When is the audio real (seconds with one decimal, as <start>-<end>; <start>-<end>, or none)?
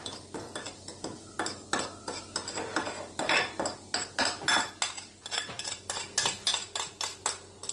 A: 0.0-7.7